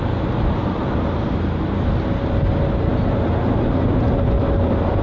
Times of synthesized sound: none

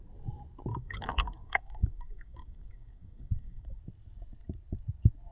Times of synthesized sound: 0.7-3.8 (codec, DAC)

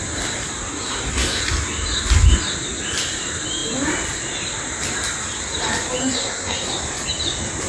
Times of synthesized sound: 0.7-1.4 (codec, SNAC); 6.0-6.7

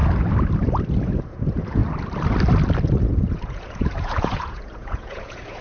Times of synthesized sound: 1.3-1.8 (vocoder, Vocos); 3.0-5.6

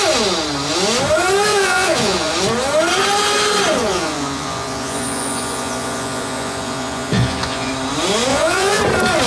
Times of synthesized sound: 1.5-2.3 (vocoder, Vocos); 3.8-7.7; 8.3-8.8

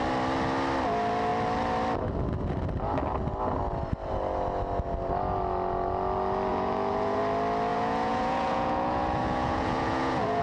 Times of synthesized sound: 6.5-7.2 (vocoder, Vocos); 7.7-10.4

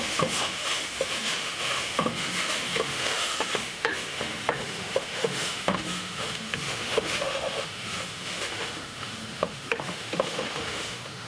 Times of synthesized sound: 0.0-11.3 (autoencoder, DAC-VAE)